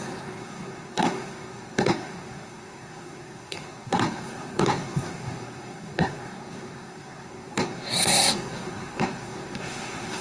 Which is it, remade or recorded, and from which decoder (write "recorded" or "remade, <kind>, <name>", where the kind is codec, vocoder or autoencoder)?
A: remade, codec, SNAC